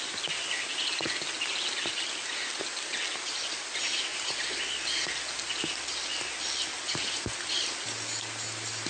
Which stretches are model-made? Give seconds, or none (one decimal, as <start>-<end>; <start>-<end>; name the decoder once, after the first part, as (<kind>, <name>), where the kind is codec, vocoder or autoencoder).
none